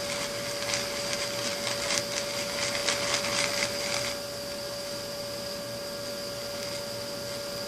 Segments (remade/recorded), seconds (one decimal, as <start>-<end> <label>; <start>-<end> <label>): 0.0-7.7 recorded